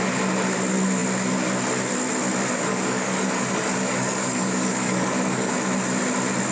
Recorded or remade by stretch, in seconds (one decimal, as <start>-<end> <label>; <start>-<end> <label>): 0.0-2.7 recorded; 2.7-5.5 remade; 5.5-6.5 recorded